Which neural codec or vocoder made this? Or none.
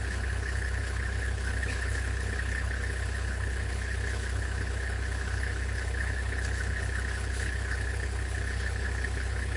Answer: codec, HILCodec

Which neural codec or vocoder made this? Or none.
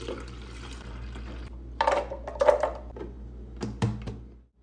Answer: none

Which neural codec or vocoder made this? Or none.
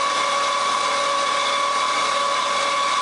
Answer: none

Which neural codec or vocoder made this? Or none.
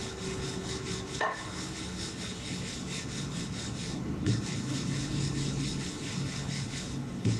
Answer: codec, HILCodec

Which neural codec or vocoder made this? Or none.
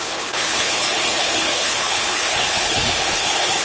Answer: codec, HILCodec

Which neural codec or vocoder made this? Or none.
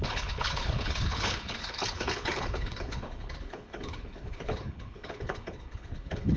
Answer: codec, HILCodec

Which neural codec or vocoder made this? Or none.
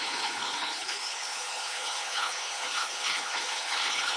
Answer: codec, HILCodec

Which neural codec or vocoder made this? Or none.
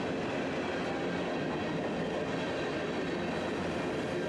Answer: none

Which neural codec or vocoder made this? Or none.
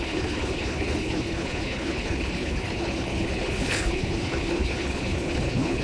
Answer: codec, HILCodec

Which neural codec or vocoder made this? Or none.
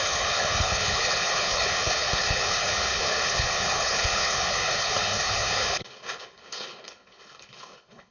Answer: codec, HILCodec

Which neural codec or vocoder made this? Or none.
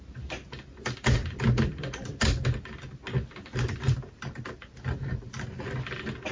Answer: none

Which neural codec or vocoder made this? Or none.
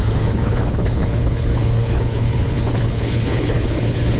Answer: codec, HILCodec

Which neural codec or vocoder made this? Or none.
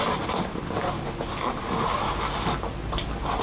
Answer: none